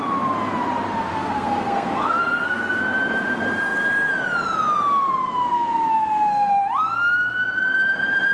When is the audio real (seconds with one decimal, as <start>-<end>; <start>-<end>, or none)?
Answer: 0.0-1.1; 2.8-5.5; 6.6-8.3